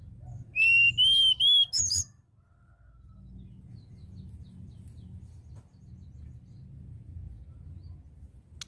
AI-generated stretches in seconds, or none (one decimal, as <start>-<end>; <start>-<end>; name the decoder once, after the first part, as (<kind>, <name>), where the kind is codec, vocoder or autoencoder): none